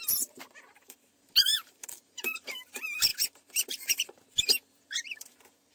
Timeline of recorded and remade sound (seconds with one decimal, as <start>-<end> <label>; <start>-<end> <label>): 0.0-3.1 remade; 3.1-3.7 recorded; 3.7-5.7 remade